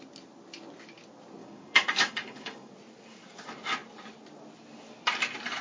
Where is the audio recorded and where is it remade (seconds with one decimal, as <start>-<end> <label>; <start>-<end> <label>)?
0.0-1.4 recorded; 1.4-2.7 remade; 2.7-5.6 recorded